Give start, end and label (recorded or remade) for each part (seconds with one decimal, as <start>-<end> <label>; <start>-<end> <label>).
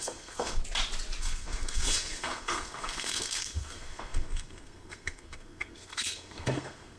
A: 0.0-0.6 remade; 0.6-1.2 recorded; 1.2-7.0 remade